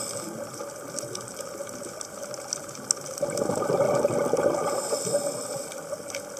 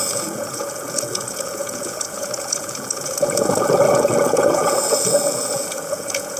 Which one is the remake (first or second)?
second